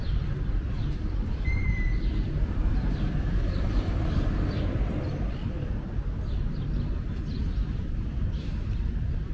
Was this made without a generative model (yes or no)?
no